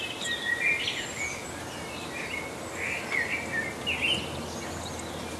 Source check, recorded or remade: recorded